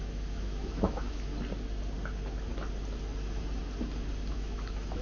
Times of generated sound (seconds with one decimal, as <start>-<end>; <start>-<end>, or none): 0.0-1.3; 4.3-5.0